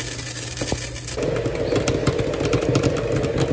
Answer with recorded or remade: recorded